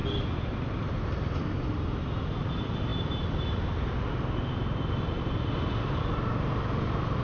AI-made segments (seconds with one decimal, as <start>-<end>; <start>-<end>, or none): none